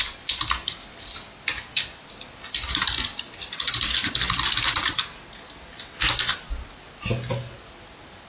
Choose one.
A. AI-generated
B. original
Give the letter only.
B